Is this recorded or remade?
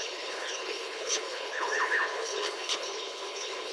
remade